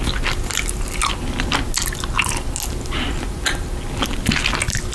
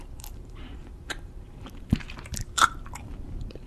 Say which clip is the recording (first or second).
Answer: first